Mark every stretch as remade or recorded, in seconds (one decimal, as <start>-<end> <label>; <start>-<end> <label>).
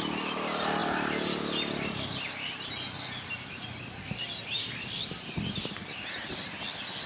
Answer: 0.0-7.1 recorded